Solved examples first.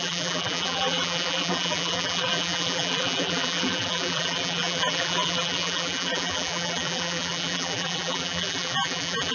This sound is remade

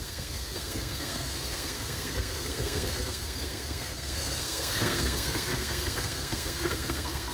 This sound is remade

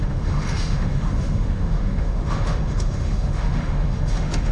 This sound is remade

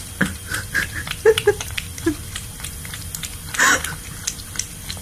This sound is recorded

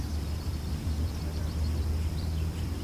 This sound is remade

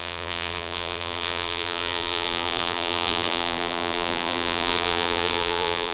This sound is remade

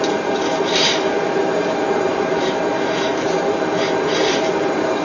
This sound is remade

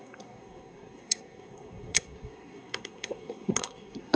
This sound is remade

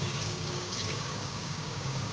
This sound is remade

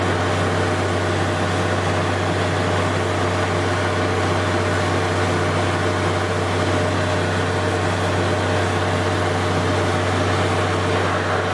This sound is recorded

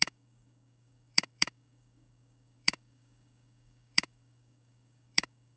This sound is remade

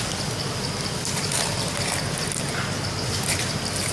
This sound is recorded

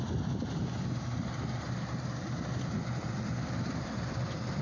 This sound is recorded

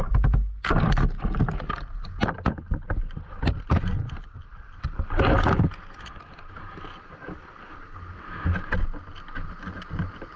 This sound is recorded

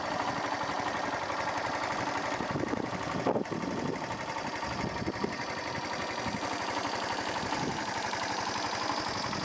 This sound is recorded